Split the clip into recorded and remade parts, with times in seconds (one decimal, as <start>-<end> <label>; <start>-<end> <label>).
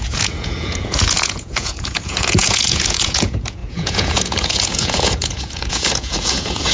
0.0-6.7 remade